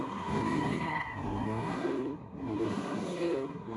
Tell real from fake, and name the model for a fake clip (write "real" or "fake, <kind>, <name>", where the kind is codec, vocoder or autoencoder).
fake, codec, SNAC